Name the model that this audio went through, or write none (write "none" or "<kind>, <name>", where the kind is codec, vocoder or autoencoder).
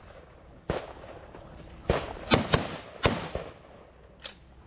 none